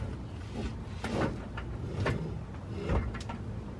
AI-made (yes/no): no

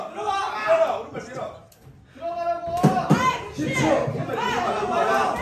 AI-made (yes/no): no